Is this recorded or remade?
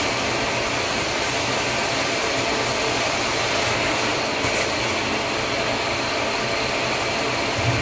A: recorded